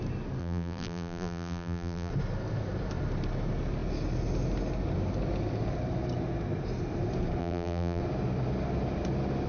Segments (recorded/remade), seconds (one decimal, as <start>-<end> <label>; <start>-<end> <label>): 0.0-0.4 recorded; 0.4-2.1 remade; 2.1-7.4 recorded; 7.4-8.0 remade; 8.0-9.5 recorded

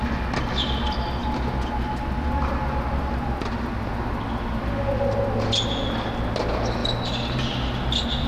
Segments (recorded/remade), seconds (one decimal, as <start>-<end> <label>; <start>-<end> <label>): 0.0-8.3 recorded

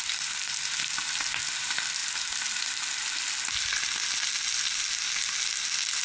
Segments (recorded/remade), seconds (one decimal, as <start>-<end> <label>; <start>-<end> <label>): 0.0-6.0 recorded

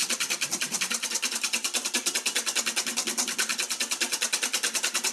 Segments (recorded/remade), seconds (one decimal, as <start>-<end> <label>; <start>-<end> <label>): 0.0-5.1 recorded

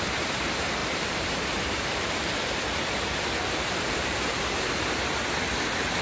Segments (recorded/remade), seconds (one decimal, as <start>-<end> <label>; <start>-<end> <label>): 0.0-0.8 recorded; 0.8-4.4 remade; 4.4-6.0 recorded

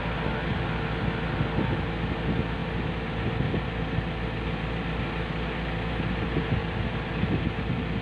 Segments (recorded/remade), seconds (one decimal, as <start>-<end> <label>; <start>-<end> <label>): 0.0-6.6 recorded; 6.6-7.4 remade; 7.4-8.0 recorded